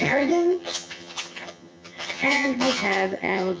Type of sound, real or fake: fake